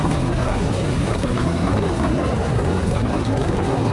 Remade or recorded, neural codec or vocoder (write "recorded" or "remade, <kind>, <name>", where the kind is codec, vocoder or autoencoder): remade, codec, SNAC